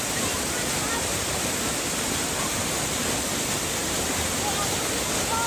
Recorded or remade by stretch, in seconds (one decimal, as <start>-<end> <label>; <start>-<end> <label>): 0.0-5.5 recorded